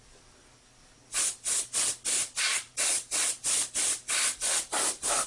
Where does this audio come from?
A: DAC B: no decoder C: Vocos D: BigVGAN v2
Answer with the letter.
B